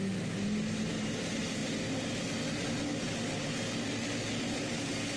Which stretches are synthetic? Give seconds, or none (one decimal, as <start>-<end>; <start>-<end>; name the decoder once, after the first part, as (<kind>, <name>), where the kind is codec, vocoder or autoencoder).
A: none